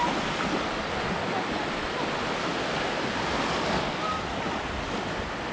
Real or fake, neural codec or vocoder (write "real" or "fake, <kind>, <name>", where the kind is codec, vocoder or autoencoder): real